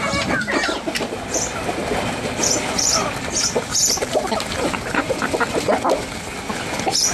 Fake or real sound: real